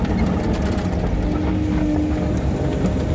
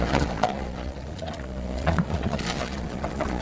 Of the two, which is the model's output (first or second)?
second